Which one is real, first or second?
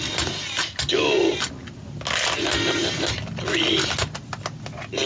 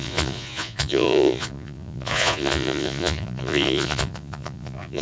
first